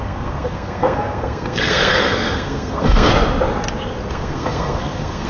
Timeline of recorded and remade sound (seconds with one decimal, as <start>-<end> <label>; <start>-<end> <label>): 0.0-3.1 remade; 3.1-4.1 recorded; 4.1-5.3 remade